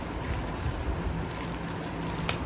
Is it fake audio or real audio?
real